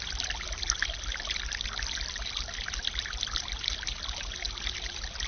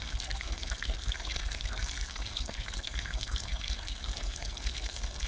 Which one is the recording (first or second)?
first